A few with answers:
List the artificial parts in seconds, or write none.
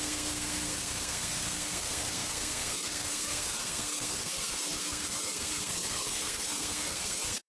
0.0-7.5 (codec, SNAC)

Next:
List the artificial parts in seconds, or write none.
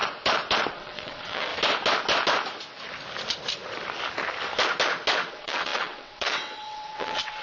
0.7-1.5 (vocoder, WaveNeXt); 5.3-7.4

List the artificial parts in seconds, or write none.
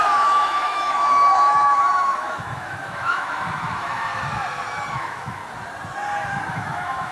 0.0-4.1 (autoencoder, DAC-VAE); 4.9-5.4; 6.5-7.1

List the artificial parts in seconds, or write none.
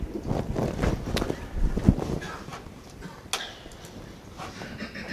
none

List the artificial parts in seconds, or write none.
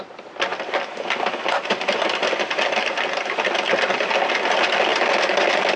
none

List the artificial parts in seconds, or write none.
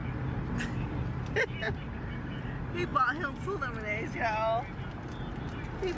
none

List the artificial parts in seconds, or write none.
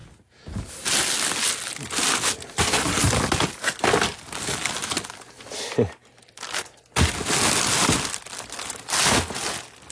none